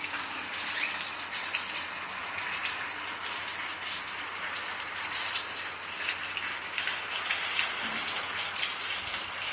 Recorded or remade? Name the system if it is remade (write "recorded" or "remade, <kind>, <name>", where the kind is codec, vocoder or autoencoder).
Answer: recorded